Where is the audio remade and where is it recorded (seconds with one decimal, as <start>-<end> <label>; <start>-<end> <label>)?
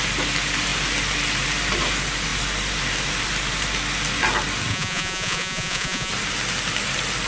0.0-4.7 recorded; 4.7-6.1 remade; 6.1-7.3 recorded